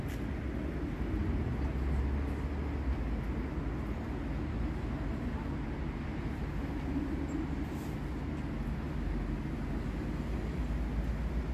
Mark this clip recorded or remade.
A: recorded